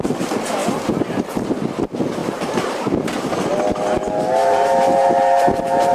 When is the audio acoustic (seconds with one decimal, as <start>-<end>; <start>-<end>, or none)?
0.0-2.2; 2.8-4.4